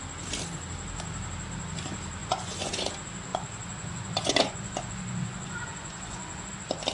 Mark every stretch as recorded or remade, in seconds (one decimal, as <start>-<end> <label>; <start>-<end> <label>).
0.0-2.2 recorded; 2.2-2.9 remade; 2.9-3.3 recorded; 3.3-6.5 remade; 6.5-6.9 recorded